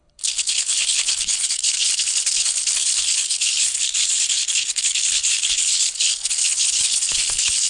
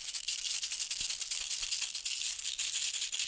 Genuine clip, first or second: second